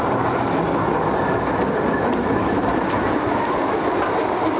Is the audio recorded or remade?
recorded